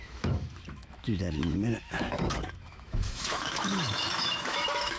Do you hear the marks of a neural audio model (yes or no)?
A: yes